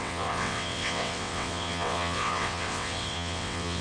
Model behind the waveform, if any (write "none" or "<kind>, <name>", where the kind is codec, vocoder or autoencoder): vocoder, WaveNeXt